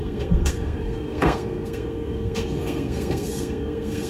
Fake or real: fake